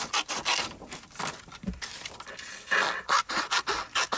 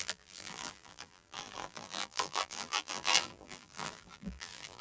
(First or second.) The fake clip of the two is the second